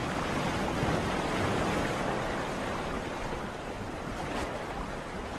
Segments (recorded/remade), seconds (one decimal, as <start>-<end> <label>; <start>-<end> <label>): 0.0-3.1 recorded; 3.1-5.4 remade